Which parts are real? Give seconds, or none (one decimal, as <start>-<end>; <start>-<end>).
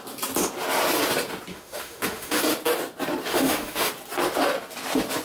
0.0-1.5; 2.4-3.3; 3.9-5.2